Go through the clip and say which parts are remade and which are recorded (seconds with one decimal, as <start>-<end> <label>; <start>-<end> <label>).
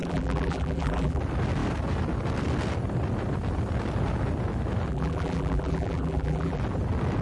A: 0.0-1.2 remade; 1.2-4.9 recorded; 4.9-6.6 remade; 6.6-7.2 recorded